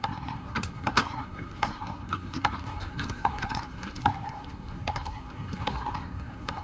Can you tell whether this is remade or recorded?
remade